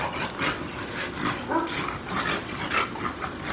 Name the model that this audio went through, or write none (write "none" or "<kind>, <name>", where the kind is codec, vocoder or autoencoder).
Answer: none